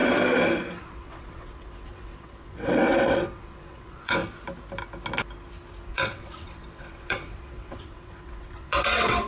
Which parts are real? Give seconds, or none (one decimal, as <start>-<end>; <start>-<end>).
0.0-0.8; 4.2-5.9